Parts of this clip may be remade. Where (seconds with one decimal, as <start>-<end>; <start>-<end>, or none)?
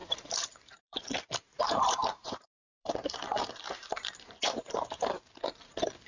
0.0-1.0; 1.5-5.2